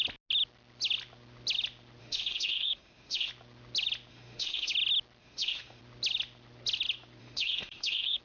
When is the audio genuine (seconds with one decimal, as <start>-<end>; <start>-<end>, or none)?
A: 0.0-2.0; 3.3-4.1; 4.7-5.2; 5.8-7.2